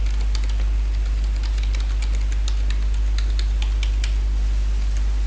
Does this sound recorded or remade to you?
recorded